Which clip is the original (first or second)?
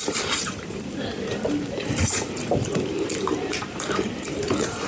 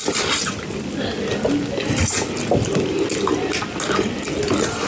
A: second